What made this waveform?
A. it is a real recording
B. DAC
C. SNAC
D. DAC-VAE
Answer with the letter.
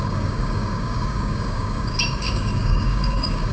B